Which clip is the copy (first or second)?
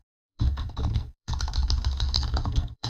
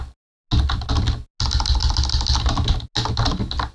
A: first